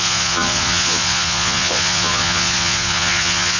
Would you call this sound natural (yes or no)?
no